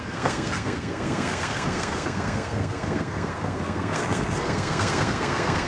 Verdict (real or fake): fake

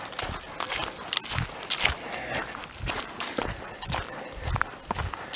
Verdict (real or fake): real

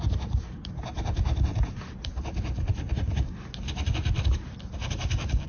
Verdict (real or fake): real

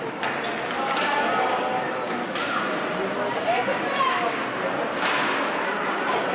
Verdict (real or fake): real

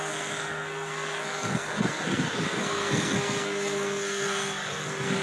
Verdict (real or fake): fake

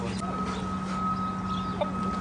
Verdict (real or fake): real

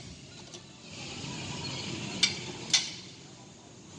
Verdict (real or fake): real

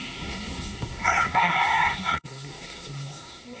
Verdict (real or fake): fake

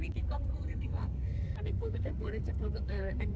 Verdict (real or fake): fake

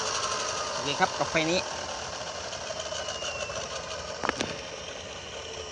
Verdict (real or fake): real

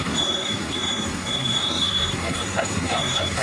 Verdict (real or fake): fake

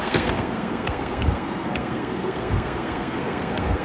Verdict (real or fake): fake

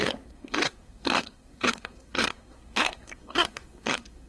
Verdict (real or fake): fake